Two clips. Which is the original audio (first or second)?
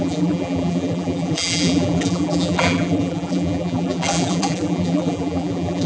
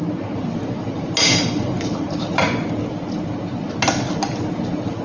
second